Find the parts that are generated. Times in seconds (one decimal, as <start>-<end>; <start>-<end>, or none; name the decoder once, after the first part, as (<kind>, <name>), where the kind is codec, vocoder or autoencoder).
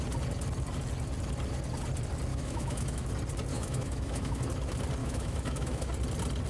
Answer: 2.3-3.1 (autoencoder, DAC-VAE); 3.5-4.4; 5.0-5.9